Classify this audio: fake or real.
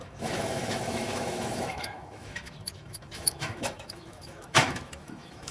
fake